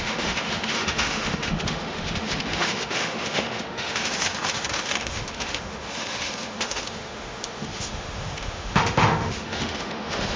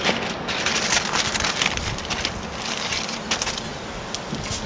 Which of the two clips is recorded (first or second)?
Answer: second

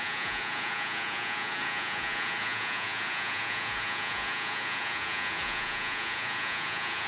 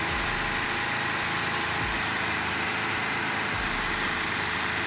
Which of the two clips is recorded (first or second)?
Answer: second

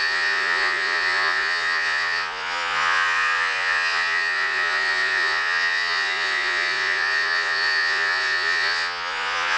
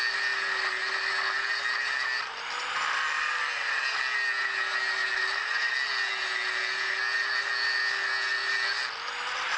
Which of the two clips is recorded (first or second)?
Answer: second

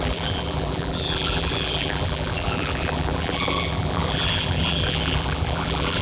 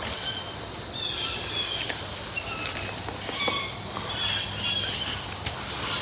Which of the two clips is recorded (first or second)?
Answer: second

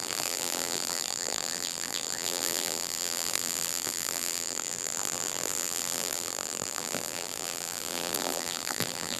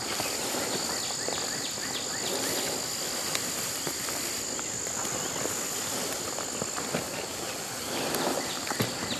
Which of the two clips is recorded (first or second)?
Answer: second